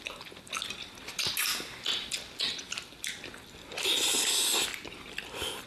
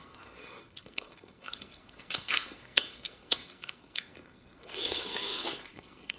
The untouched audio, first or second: first